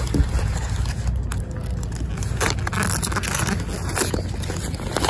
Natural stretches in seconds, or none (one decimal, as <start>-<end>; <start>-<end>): 0.0-5.1